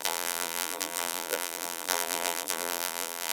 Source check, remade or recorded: remade